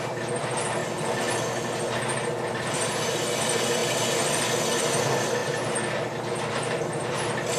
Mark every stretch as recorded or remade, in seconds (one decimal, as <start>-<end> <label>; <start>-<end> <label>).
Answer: 0.0-0.8 remade; 0.8-2.5 recorded; 2.5-3.8 remade; 3.8-5.0 recorded; 5.0-5.4 remade; 5.4-6.5 recorded; 6.5-7.6 remade